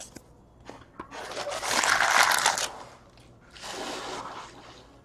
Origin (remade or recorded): recorded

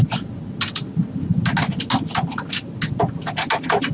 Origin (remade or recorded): recorded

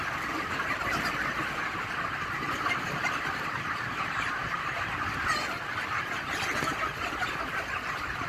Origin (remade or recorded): recorded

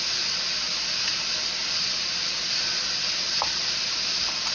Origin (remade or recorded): recorded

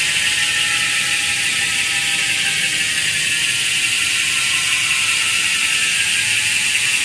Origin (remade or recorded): recorded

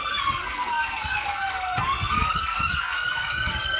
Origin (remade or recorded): remade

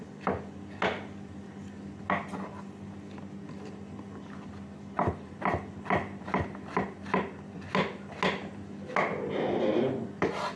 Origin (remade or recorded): recorded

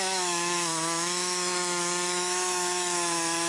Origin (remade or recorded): remade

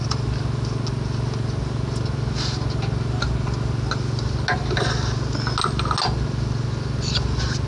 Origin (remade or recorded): recorded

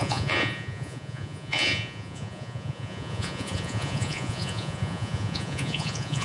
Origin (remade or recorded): remade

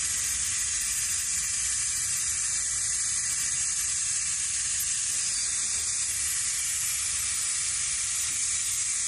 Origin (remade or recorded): recorded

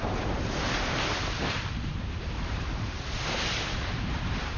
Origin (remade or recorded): remade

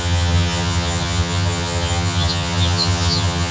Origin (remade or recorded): remade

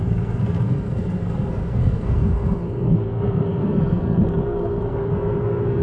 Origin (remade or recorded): remade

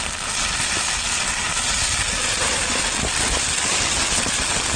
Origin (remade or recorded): recorded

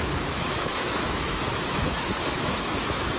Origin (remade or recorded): remade